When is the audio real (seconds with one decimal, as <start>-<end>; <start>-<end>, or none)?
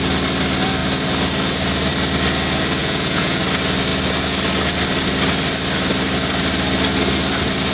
0.0-2.8; 3.4-7.7